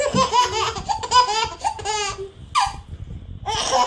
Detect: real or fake real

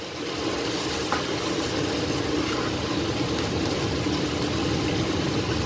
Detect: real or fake real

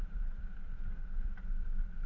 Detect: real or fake fake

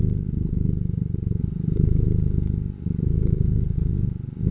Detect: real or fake real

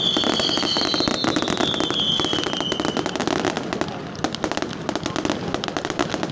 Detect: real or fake real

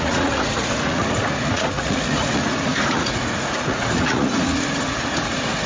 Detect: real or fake fake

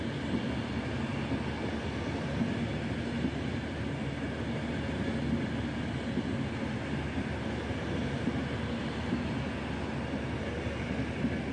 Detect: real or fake real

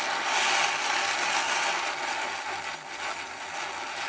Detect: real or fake real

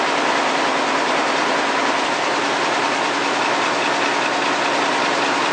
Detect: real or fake real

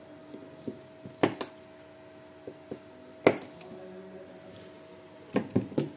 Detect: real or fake real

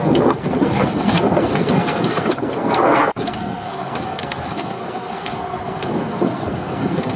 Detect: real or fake fake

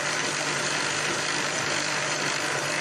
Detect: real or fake real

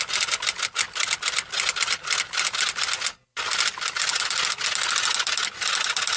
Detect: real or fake real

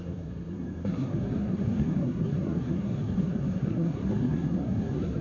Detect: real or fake fake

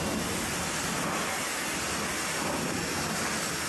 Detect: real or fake real